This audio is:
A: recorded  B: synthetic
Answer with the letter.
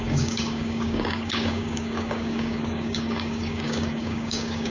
B